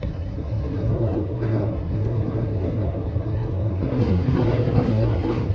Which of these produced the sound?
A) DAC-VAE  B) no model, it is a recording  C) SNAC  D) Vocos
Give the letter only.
C